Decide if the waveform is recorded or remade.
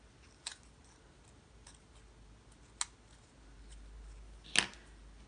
recorded